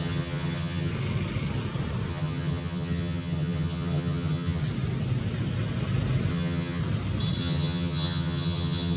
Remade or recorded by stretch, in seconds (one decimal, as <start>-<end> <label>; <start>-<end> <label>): 0.0-0.9 remade; 0.9-2.1 recorded; 2.1-4.6 remade; 4.6-6.3 recorded; 6.3-6.8 remade; 6.8-7.4 recorded; 7.4-9.0 remade